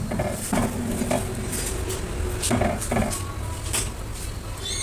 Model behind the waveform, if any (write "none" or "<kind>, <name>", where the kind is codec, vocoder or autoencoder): none